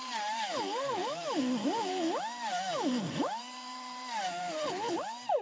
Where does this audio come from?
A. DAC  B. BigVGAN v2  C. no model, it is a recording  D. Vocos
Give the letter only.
B